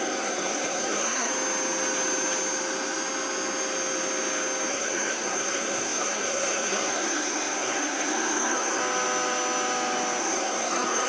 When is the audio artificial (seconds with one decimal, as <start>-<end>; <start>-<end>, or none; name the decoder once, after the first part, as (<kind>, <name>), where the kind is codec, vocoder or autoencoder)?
0.0-1.3 (codec, SNAC); 4.7-8.8; 10.2-11.1